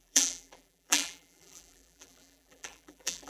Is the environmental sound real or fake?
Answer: fake